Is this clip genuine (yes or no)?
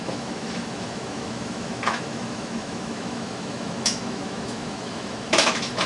no